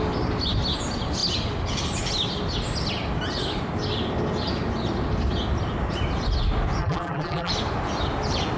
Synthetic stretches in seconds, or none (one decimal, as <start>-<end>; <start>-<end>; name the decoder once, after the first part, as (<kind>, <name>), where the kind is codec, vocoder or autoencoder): 6.8-7.5 (vocoder, BigVGAN v2)